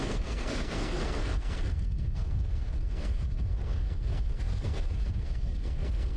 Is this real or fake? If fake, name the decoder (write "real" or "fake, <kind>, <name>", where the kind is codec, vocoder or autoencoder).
fake, codec, SNAC